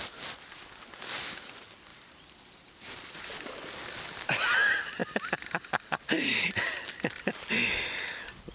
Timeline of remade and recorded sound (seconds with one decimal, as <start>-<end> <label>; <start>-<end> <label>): 0.0-1.9 recorded; 1.9-3.2 remade; 3.2-8.5 recorded